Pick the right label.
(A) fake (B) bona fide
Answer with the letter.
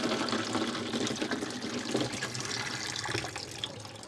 B